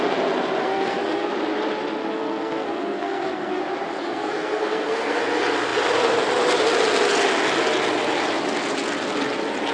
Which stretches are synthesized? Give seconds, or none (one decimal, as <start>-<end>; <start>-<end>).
0.6-1.3; 2.0-3.6; 4.0-5.2